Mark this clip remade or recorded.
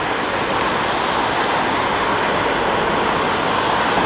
recorded